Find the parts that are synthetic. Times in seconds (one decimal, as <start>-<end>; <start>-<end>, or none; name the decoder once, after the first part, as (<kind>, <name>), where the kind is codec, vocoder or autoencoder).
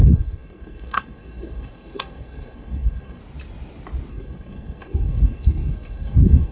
0.0-3.2 (codec, SNAC); 4.1-6.5